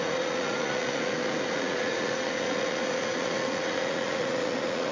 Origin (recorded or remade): remade